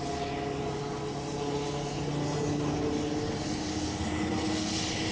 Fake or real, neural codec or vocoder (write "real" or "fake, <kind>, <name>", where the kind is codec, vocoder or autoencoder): real